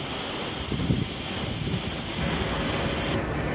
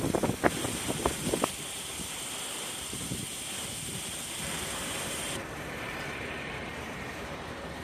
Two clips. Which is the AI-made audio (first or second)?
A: second